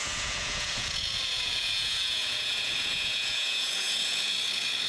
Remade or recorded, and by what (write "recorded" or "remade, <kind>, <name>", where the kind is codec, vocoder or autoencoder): remade, vocoder, Vocos